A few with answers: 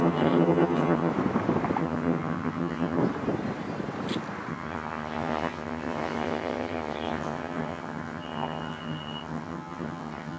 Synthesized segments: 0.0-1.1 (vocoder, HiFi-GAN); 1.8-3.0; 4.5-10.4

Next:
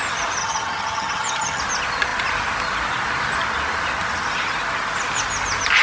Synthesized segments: 0.4-1.6 (vocoder, HiFi-GAN)

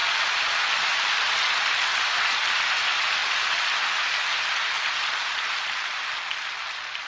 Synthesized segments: none

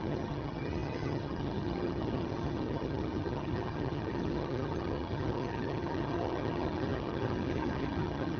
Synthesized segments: 0.0-8.4 (vocoder, HiFi-GAN)

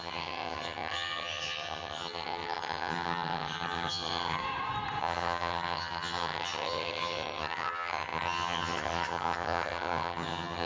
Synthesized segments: 0.0-4.4 (vocoder, HiFi-GAN); 5.0-10.7

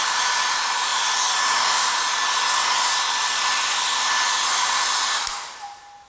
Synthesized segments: none

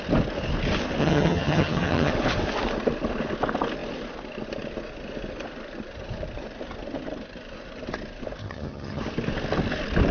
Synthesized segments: 1.0-2.1 (vocoder, HiFi-GAN); 8.4-9.0

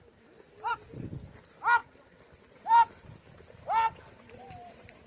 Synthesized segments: none